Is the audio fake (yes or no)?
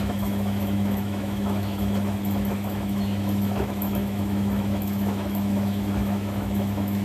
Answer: yes